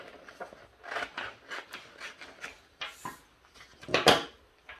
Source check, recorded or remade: recorded